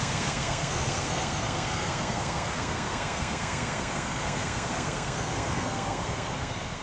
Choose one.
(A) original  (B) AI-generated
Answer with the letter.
B